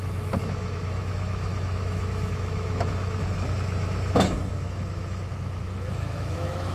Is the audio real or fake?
fake